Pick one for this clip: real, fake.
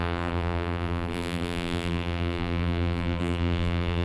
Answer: fake